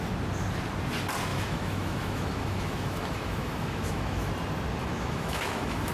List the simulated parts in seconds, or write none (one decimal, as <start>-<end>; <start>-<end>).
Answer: 1.3-4.3; 4.8-5.9